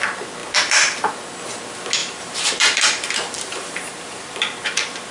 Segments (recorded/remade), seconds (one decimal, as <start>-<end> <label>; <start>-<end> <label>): 0.0-2.0 recorded; 2.0-5.1 remade